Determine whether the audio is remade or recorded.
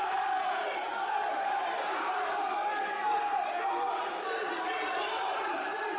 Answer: remade